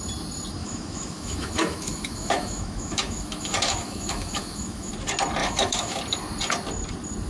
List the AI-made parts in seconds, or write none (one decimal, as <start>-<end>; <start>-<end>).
0.6-4.9; 5.4-6.0